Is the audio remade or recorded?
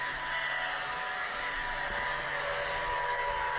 recorded